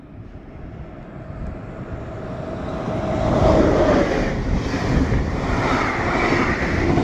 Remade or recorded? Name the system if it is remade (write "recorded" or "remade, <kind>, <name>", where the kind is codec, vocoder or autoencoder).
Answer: recorded